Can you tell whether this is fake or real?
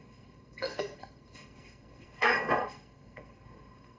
fake